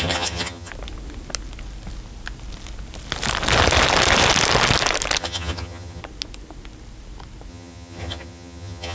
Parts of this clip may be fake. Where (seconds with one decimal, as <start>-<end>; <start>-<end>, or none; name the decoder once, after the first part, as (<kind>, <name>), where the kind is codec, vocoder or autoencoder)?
0.0-0.7 (vocoder, HiFi-GAN); 5.2-6.0; 7.5-8.9